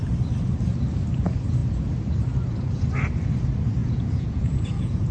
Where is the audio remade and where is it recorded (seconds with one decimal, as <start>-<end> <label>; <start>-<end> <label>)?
0.0-3.8 recorded; 3.8-5.1 remade